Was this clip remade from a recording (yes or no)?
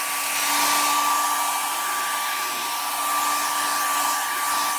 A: no